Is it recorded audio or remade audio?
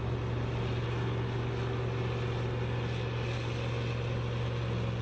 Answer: recorded